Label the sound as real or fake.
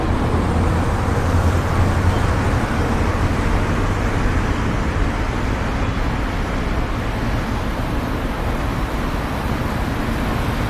real